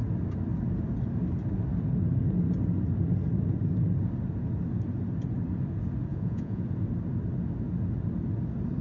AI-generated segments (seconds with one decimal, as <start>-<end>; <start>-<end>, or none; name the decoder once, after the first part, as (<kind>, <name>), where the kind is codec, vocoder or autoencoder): 6.1-6.6 (vocoder, Vocos)